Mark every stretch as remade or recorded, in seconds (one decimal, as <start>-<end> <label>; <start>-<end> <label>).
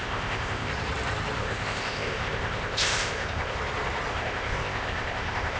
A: 0.0-0.7 remade; 0.7-1.4 recorded; 1.4-3.6 remade; 3.6-4.1 recorded; 4.1-5.6 remade